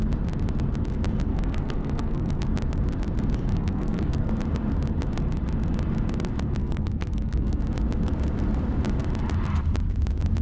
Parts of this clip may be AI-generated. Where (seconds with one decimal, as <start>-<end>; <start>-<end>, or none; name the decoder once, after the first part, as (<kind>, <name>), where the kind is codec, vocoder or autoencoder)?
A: 1.3-2.4 (codec, SNAC); 3.5-4.3; 6.6-7.6